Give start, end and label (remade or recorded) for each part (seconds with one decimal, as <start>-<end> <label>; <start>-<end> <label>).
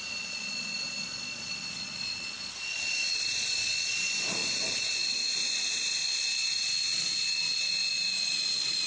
0.0-8.9 remade